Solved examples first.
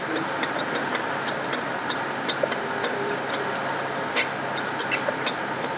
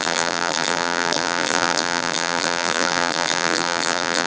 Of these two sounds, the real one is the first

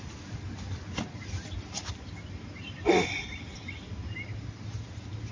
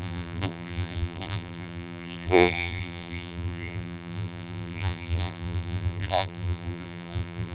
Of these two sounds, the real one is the first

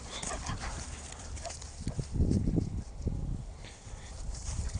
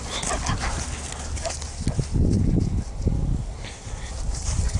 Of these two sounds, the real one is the second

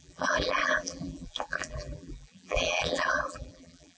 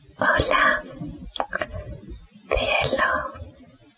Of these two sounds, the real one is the second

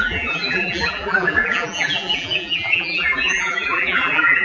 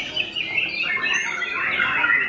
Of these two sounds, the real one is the second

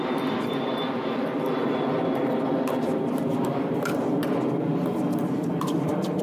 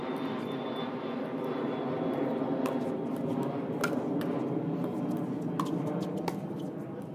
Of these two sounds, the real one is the second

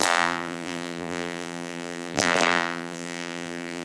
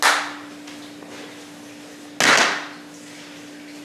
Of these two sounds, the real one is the second